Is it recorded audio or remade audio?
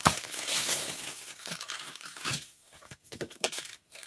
remade